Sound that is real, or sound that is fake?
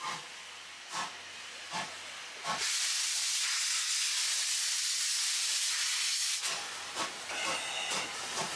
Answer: real